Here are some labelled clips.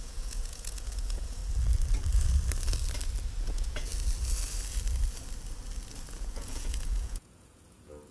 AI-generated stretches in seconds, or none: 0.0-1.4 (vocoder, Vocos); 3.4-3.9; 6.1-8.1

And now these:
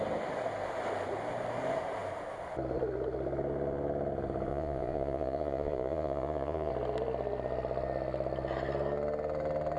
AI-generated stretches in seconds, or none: 4.5-6.7 (vocoder, Vocos)

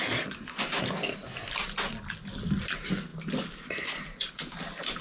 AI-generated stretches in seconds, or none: none

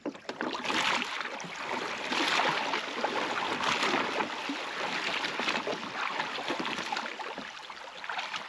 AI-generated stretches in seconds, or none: none

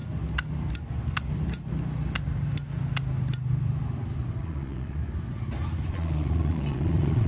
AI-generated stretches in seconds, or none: 4.4-5.0 (vocoder, Vocos); 5.9-7.3